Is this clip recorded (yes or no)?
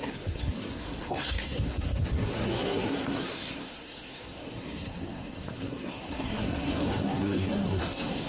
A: no